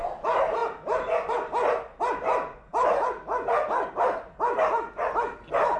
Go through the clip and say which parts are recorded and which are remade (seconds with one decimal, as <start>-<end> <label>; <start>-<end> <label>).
0.0-0.6 recorded; 0.6-2.0 remade; 2.0-2.7 recorded; 2.7-5.3 remade; 5.3-5.8 recorded